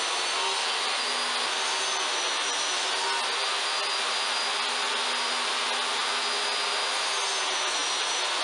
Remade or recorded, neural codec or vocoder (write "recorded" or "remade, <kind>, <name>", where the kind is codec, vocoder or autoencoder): recorded